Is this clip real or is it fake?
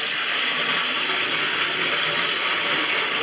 real